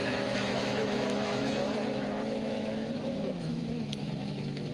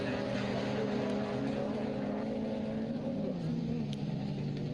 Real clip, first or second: second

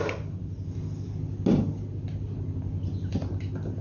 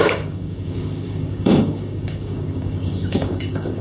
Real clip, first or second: first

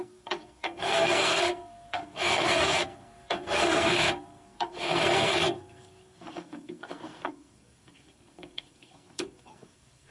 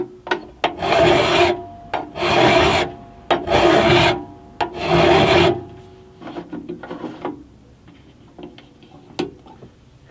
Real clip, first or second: second